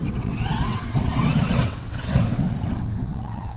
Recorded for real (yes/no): no